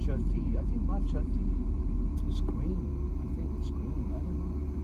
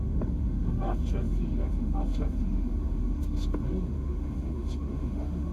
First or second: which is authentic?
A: first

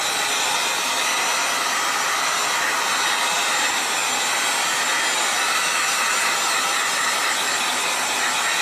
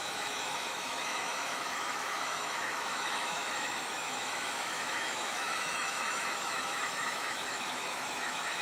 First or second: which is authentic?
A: first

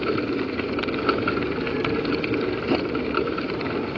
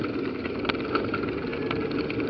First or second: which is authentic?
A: second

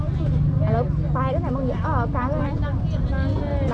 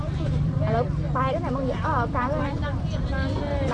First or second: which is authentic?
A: first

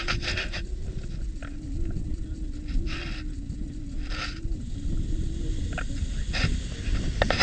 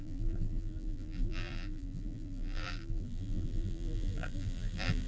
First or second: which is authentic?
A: first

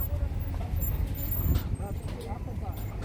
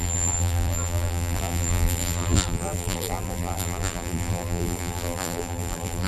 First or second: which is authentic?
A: first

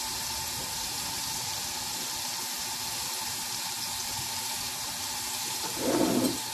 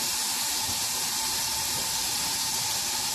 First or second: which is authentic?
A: first